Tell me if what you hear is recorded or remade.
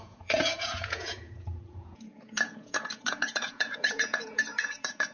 remade